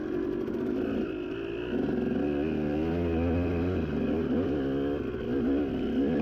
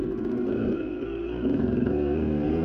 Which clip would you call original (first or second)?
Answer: first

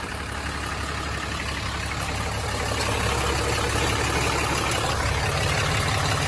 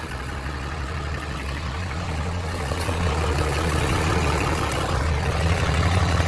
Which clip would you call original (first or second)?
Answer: first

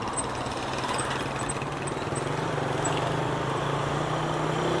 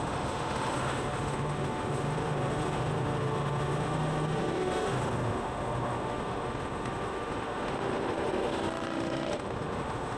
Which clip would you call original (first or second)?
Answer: first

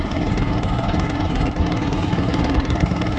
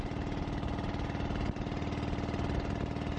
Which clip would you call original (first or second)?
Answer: second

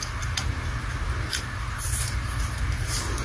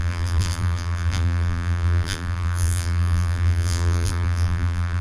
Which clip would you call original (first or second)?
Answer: first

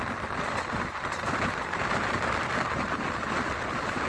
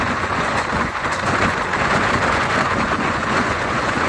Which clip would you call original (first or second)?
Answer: first